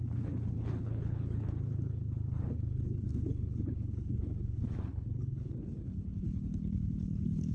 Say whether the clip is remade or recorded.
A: remade